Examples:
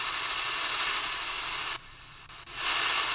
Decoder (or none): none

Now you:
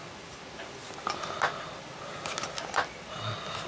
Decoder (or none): none